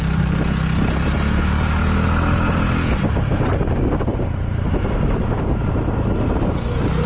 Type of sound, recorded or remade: recorded